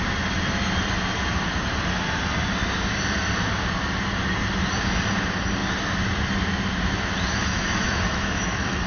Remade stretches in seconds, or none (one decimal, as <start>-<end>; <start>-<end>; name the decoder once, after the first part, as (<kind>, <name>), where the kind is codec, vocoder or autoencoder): 7.5-8.9 (autoencoder, DAC-VAE)